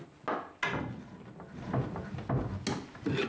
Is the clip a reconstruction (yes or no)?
no